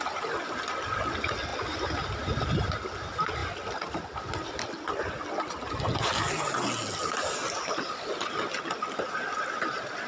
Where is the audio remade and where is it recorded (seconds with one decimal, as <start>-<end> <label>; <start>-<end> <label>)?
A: 0.0-10.1 recorded